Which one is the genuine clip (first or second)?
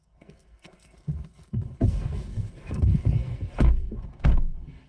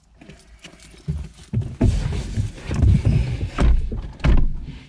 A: second